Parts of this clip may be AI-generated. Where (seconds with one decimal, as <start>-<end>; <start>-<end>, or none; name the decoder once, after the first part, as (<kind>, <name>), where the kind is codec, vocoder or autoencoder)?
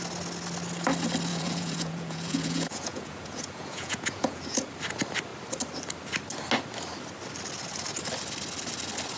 1.3-4.7 (vocoder, Vocos)